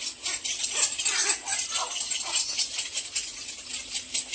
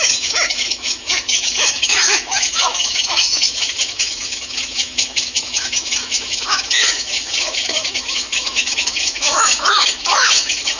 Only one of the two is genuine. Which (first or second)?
first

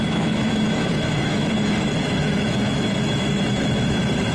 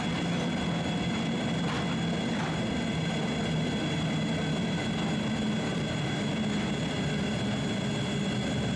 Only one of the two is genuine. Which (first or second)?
second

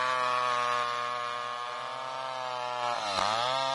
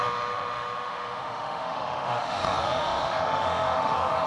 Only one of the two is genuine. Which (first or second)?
first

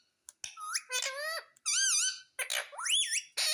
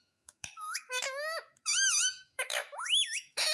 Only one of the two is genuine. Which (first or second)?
first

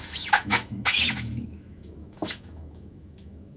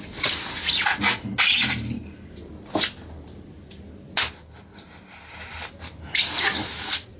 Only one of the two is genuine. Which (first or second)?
second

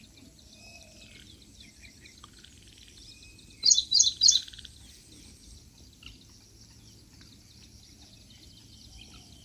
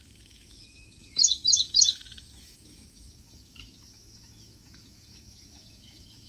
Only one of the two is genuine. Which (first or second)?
first